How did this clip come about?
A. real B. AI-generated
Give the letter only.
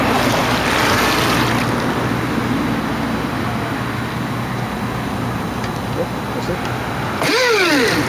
A